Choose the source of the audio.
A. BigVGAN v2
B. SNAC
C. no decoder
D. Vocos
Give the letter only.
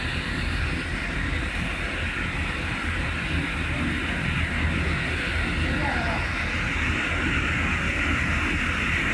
C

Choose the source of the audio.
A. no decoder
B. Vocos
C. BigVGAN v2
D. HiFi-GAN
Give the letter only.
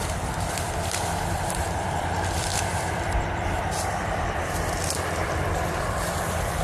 C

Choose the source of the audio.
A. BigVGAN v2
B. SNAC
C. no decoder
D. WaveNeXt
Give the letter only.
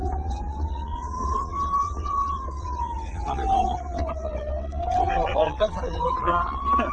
D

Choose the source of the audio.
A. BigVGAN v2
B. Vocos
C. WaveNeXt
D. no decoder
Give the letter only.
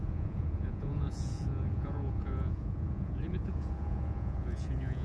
B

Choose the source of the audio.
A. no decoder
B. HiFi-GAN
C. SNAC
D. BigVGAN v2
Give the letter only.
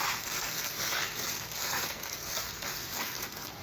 C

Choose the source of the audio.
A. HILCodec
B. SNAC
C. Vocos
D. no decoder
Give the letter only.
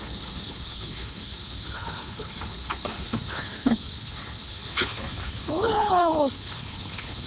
A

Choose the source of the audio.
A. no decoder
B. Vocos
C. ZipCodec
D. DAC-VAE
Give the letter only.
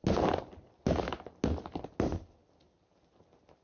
A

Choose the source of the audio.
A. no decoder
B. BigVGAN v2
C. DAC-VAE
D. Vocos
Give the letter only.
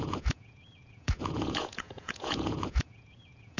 D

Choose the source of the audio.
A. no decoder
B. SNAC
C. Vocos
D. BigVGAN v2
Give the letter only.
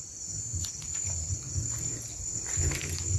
A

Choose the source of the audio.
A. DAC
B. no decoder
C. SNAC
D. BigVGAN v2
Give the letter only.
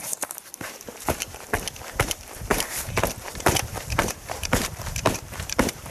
D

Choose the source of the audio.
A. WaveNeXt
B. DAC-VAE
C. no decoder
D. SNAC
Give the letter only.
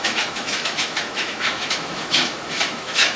B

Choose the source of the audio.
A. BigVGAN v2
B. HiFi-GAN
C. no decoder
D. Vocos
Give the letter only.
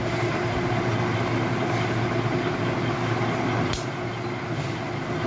C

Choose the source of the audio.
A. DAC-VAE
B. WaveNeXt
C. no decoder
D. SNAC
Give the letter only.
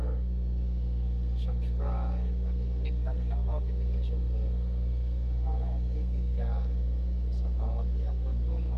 D